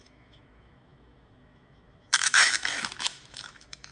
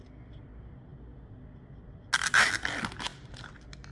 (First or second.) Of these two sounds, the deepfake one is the first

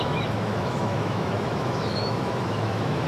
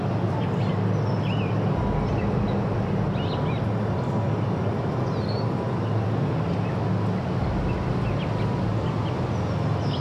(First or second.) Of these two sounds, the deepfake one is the first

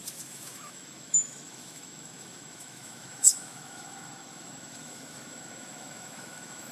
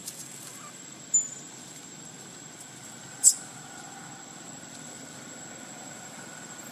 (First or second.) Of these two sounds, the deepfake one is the first